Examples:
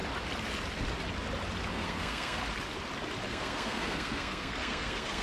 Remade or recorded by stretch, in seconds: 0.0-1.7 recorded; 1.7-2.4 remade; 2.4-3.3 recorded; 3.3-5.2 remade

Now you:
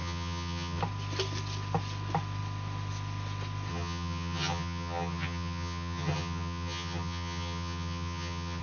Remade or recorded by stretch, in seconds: 0.0-0.8 remade; 0.8-3.7 recorded; 3.7-8.6 remade

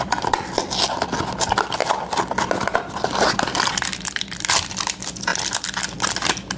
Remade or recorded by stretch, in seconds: 0.0-1.8 recorded; 1.8-3.3 remade; 3.3-5.3 recorded; 5.3-6.1 remade; 6.1-6.6 recorded

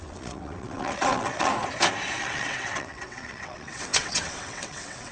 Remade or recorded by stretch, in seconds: 0.0-1.5 remade; 1.5-2.2 recorded; 2.2-5.1 remade